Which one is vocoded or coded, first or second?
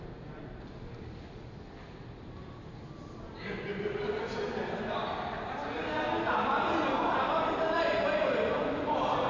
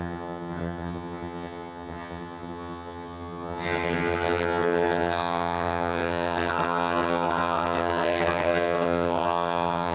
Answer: second